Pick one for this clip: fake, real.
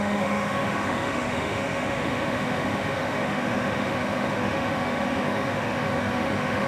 fake